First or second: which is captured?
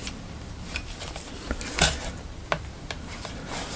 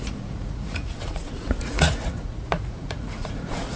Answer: first